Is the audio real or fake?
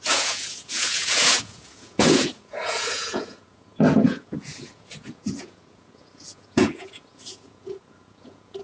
fake